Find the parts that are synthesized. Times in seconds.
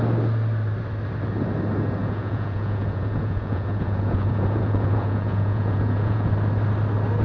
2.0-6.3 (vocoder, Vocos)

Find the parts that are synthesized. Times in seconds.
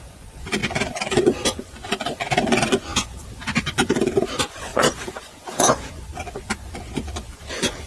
0.0-7.9 (vocoder, Vocos)